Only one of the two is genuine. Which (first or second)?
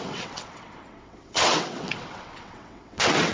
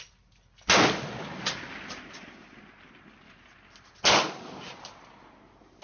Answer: second